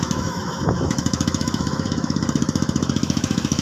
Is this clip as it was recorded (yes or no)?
no